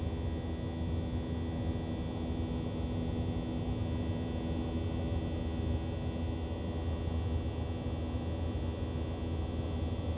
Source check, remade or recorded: recorded